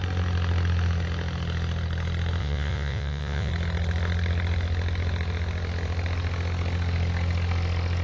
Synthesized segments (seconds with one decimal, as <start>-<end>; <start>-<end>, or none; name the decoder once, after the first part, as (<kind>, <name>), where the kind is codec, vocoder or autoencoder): 2.4-3.5 (vocoder, Vocos)